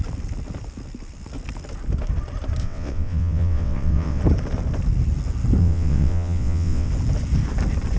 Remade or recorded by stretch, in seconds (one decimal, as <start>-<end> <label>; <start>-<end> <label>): 0.0-2.6 recorded; 2.6-4.2 remade; 4.2-5.6 recorded; 5.6-6.9 remade; 6.9-8.0 recorded